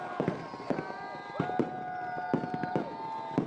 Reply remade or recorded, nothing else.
recorded